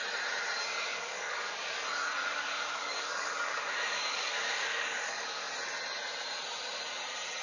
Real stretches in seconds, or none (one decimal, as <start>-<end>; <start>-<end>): 0.0-0.9; 1.8-2.3; 5.5-7.4